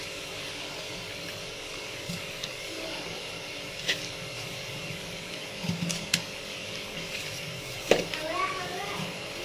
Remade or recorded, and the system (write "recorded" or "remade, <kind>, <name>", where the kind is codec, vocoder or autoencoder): remade, codec, DAC